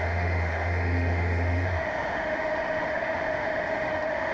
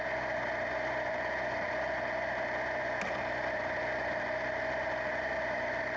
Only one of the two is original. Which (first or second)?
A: second